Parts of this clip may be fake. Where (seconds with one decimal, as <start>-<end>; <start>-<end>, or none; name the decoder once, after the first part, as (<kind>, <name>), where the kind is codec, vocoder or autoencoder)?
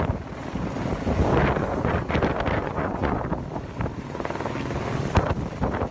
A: 1.6-2.1 (vocoder, Vocos); 2.6-3.2